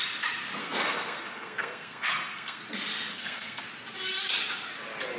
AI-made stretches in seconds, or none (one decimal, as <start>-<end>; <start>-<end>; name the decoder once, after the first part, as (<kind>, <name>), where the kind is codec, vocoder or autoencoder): 0.6-2.6 (codec, SNAC); 3.1-3.6